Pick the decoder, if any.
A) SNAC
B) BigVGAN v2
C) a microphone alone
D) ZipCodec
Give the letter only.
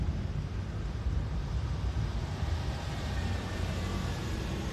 B